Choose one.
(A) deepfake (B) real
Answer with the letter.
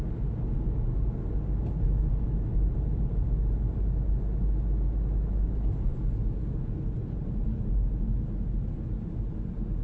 B